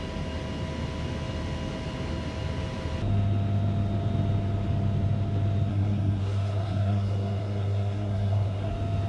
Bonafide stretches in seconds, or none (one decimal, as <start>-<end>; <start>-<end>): 0.0-5.7; 8.7-9.1